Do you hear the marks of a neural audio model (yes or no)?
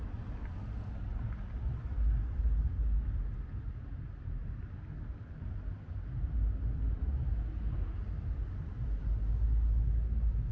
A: no